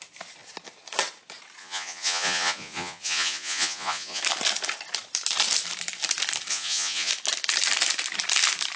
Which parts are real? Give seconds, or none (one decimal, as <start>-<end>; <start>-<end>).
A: 0.0-1.6; 4.2-6.5; 7.1-8.8